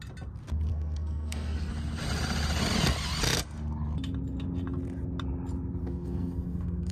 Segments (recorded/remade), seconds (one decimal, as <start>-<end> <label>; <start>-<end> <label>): 0.0-0.7 recorded; 0.7-1.7 remade; 1.7-5.8 recorded; 5.8-6.9 remade